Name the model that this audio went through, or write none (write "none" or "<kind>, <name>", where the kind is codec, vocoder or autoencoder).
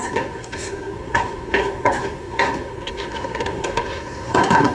codec, SNAC